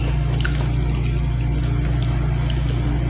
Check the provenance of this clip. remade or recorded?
recorded